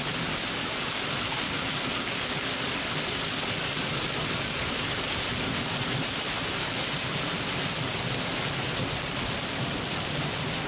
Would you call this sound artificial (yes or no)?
no